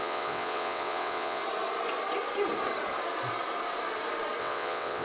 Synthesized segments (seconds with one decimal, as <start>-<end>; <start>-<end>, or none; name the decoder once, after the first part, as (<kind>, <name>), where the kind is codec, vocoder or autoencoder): 0.0-1.4 (vocoder, WaveNeXt); 4.4-5.0